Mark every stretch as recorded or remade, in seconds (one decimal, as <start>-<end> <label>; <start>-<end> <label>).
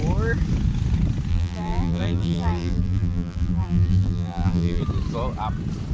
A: 0.0-1.3 recorded; 1.3-4.8 remade; 4.8-5.9 recorded